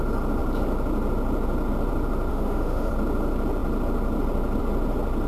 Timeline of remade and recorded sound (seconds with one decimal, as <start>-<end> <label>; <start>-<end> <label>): 0.0-2.3 recorded; 2.3-2.9 remade; 2.9-5.3 recorded